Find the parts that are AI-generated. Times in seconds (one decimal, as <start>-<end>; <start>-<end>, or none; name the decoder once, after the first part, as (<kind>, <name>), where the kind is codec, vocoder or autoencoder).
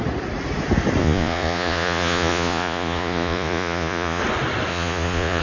1.0-4.2 (vocoder, Vocos); 4.7-5.4